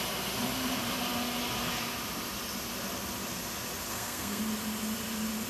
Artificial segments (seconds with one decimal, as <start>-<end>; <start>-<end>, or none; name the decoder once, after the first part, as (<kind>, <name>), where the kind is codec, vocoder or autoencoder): 3.9-4.4 (codec, SNAC)